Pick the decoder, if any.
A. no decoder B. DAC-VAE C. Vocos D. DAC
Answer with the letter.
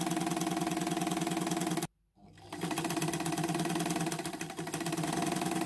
A